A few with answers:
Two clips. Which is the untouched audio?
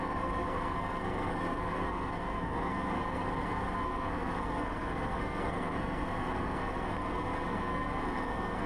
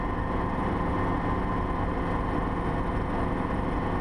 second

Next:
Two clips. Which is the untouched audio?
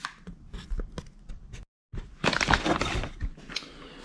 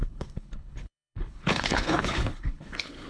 first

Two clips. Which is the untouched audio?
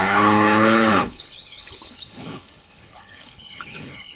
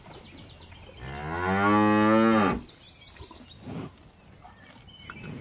second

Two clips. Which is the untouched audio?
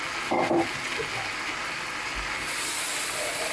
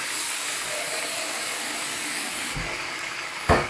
first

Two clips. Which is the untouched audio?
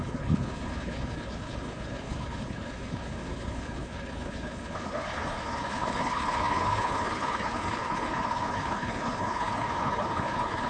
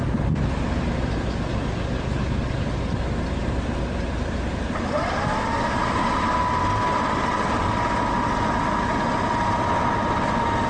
second